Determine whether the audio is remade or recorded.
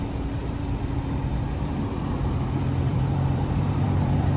remade